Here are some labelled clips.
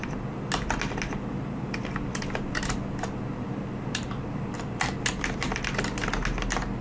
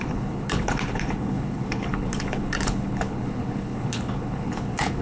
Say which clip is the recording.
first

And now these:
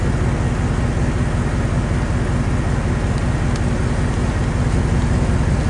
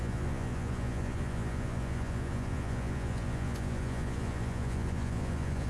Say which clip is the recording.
first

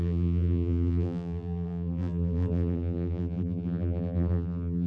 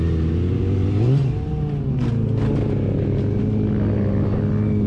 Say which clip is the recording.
second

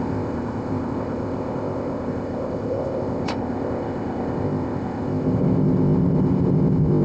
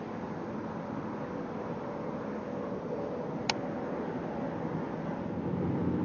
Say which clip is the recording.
second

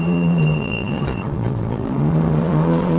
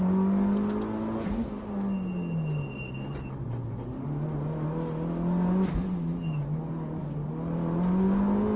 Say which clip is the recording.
second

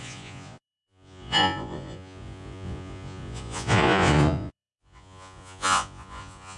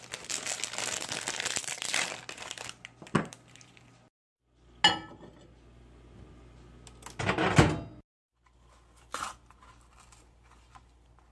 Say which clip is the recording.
second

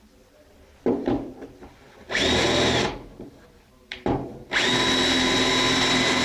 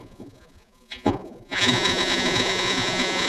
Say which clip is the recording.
first